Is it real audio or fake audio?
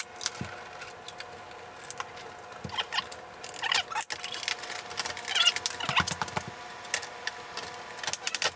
real